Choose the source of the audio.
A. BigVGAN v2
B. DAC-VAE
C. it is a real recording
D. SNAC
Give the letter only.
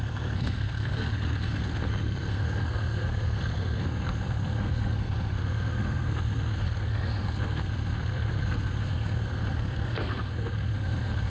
D